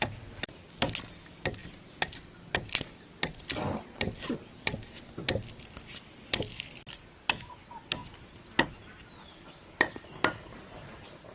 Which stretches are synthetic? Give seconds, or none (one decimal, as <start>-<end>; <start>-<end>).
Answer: none